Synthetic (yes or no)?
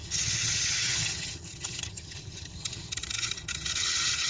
yes